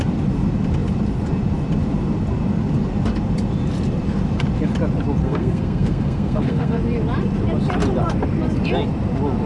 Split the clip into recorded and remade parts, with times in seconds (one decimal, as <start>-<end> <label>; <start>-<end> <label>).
0.0-5.2 recorded; 5.2-6.8 remade; 6.8-9.5 recorded